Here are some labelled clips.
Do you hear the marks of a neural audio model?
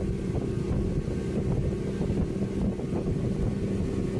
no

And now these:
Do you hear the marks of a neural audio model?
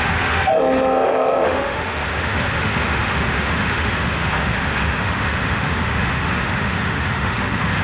yes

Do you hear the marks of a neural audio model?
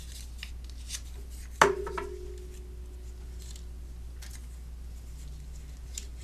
no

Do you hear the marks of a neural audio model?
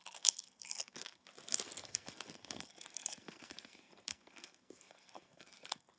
yes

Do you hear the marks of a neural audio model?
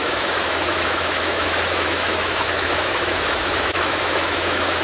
yes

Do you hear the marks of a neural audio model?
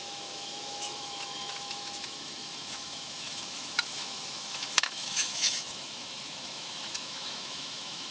yes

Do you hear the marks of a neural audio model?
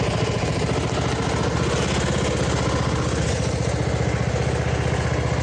no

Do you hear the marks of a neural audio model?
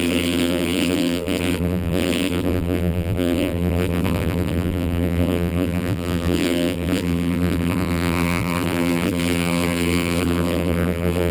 yes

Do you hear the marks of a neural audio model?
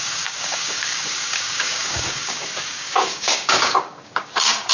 yes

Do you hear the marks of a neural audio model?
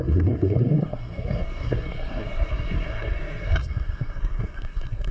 yes